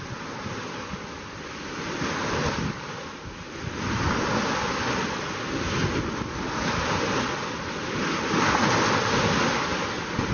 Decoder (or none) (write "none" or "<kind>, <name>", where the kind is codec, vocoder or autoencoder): none